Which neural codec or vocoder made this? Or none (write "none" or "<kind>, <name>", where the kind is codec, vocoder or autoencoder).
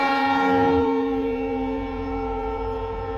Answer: vocoder, Vocos